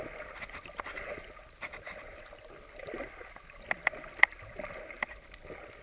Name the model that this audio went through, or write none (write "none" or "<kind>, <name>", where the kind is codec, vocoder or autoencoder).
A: none